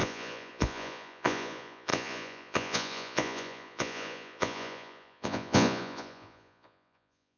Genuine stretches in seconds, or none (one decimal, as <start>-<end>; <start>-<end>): none